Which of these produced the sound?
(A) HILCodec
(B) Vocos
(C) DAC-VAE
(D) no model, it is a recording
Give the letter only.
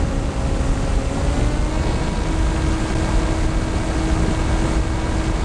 D